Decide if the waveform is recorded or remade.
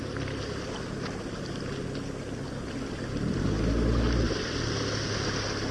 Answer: recorded